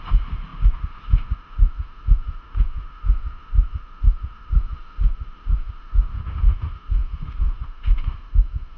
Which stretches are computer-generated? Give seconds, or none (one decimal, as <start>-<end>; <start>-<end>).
0.0-8.8